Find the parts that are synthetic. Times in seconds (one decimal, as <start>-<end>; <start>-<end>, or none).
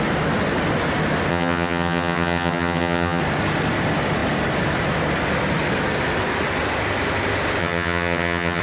1.3-3.2; 7.6-8.6